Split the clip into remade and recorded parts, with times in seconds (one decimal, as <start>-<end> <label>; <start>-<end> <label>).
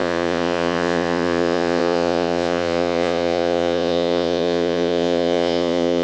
0.0-6.0 remade